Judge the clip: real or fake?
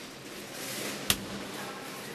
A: real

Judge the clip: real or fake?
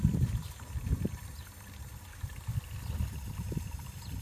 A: real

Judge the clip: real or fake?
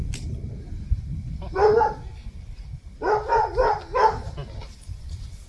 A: real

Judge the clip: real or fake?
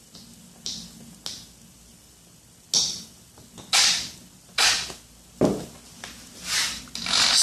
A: real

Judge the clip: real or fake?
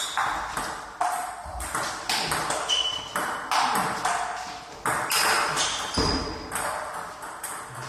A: real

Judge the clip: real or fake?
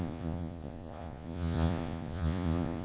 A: fake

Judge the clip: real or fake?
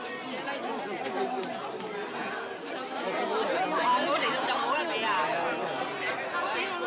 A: real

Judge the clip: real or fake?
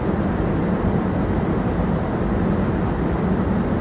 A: real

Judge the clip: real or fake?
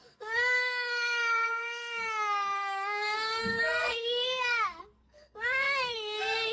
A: fake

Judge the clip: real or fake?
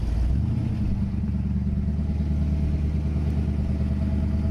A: real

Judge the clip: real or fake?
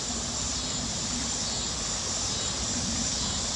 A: real